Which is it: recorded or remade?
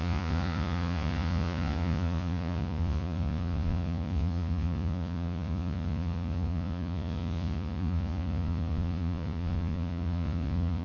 remade